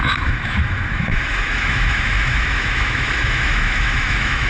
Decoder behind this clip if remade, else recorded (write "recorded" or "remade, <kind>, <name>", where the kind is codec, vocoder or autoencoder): remade, autoencoder, DAC-VAE